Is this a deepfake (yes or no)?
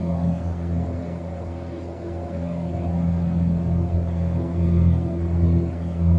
yes